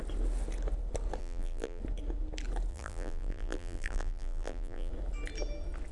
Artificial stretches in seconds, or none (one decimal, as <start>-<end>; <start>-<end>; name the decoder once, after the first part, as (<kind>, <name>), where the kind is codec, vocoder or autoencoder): 1.2-1.8 (vocoder, BigVGAN v2); 2.7-4.9